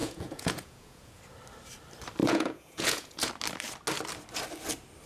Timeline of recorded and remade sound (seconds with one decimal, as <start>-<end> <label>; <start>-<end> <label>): 0.0-1.2 remade; 1.2-2.2 recorded; 2.2-3.3 remade; 3.3-5.1 recorded